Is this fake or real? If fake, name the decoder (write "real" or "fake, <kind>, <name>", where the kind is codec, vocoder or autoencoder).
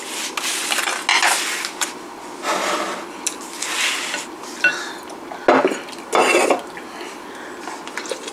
real